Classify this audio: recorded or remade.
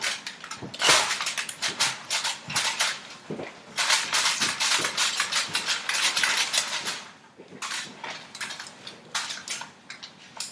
recorded